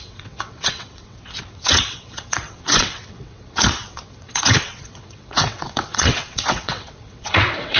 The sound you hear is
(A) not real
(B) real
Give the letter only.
A